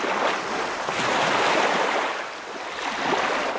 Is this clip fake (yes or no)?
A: no